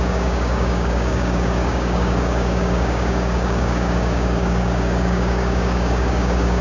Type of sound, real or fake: fake